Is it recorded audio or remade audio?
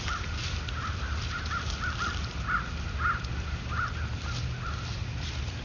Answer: recorded